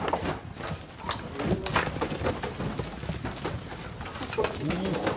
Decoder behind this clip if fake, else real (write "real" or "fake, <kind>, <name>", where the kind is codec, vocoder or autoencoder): real